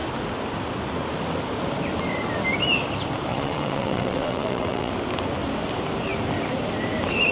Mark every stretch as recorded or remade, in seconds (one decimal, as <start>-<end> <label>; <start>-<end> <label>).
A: 0.0-3.3 recorded; 3.3-4.9 remade; 4.9-7.3 recorded